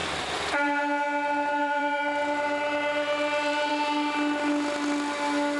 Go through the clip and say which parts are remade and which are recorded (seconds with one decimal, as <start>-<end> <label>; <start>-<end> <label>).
0.0-0.8 remade; 0.8-1.6 recorded; 1.6-3.7 remade; 3.7-5.6 recorded